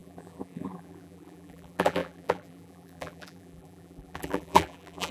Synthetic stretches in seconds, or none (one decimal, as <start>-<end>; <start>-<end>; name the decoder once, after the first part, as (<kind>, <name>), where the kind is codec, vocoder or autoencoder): 0.0-5.1 (vocoder, BigVGAN v2)